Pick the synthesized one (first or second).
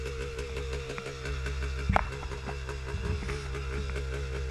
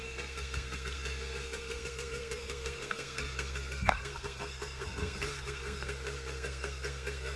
second